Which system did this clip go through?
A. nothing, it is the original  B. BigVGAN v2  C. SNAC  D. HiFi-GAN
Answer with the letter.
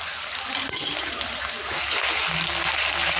A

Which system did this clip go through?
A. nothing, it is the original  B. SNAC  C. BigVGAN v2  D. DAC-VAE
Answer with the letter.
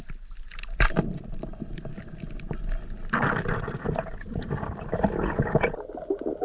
A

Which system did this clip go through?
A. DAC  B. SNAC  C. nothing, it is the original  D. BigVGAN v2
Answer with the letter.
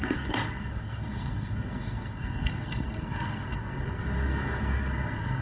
B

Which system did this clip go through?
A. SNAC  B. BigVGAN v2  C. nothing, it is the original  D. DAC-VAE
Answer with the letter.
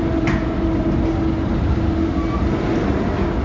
C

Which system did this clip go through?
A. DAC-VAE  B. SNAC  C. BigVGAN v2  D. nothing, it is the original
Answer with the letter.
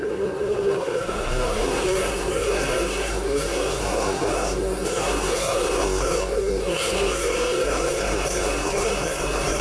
B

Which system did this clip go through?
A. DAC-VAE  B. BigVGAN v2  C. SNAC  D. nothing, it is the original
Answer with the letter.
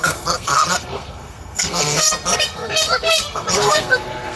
C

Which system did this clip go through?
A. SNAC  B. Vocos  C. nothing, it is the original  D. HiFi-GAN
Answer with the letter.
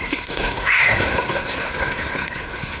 A